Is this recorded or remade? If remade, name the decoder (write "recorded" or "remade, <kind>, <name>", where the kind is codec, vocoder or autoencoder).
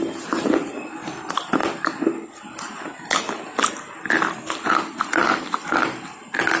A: recorded